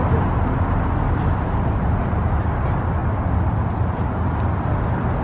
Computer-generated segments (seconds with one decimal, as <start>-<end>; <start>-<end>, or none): none